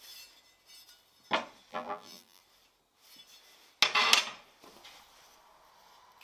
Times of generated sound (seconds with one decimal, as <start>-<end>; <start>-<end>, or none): 1.7-2.4